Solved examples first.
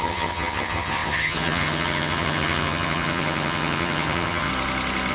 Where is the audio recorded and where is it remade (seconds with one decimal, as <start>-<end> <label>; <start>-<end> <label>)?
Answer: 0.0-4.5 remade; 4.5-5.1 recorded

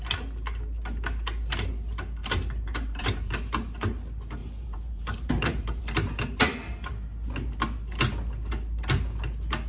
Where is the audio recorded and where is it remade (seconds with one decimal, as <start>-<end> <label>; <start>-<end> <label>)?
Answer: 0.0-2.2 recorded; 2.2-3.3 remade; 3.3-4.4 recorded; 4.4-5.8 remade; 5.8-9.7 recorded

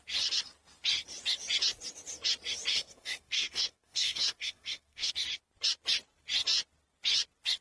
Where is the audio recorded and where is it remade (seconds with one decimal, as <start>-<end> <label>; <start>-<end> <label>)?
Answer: 0.0-2.7 recorded; 2.7-5.1 remade; 5.1-7.6 recorded

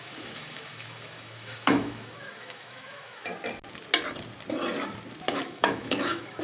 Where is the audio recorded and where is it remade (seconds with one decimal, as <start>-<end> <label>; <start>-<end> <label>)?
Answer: 0.0-3.3 remade; 3.3-5.3 recorded; 5.3-6.4 remade

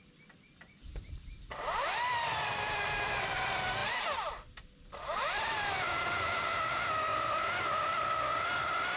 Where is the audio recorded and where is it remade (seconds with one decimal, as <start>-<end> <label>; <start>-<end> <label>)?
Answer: 0.0-7.1 remade; 7.1-8.4 recorded; 8.4-9.0 remade